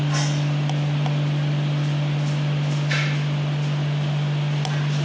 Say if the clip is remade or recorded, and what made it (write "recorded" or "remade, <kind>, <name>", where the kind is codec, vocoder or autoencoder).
recorded